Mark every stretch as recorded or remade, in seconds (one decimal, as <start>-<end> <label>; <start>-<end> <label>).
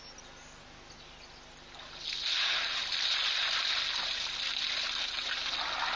0.0-6.0 recorded